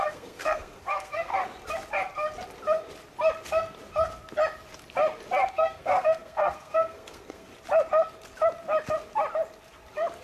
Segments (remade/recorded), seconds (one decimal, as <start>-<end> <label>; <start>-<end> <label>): 0.0-1.3 remade; 1.3-5.5 recorded; 5.5-7.5 remade; 7.5-10.2 recorded